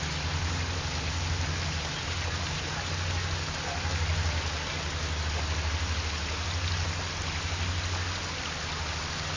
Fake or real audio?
real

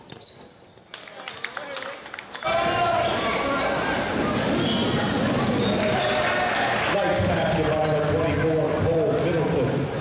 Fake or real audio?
real